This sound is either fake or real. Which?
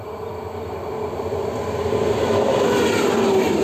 real